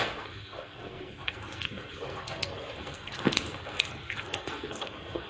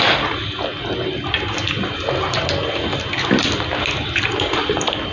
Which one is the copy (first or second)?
first